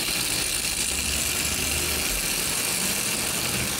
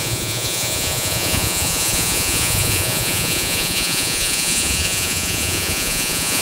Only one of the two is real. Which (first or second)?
first